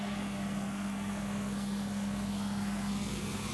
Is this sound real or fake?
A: fake